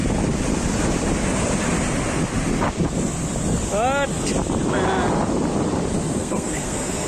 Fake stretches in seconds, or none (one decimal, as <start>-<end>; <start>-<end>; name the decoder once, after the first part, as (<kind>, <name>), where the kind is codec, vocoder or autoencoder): 6.2-7.1 (codec, SNAC)